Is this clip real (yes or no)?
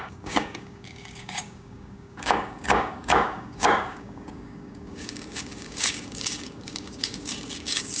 no